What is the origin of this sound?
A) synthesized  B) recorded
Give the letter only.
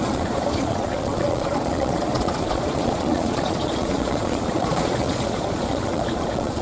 A